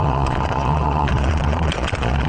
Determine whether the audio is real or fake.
fake